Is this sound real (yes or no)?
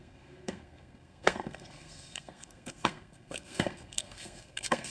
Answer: no